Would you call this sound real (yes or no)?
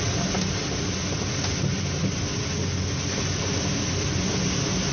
yes